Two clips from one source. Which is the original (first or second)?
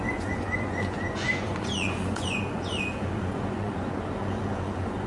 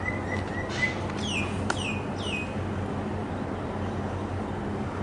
second